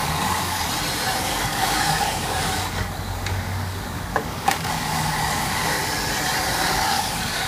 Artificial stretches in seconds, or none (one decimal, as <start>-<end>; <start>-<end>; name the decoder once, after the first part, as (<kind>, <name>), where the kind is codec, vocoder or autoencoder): 0.0-0.6 (codec, DAC); 1.2-5.8; 6.7-7.5